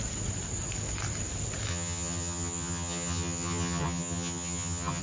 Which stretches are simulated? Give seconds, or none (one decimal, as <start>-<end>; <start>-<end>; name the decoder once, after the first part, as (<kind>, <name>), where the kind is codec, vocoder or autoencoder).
1.7-5.0 (vocoder, HiFi-GAN)